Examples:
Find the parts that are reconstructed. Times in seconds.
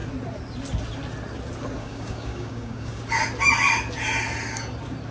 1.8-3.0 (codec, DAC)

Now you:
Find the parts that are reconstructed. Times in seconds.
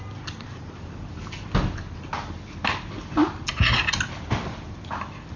none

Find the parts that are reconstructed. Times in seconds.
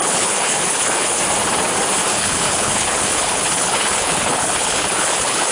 0.0-1.2 (codec, HILCodec); 2.1-5.5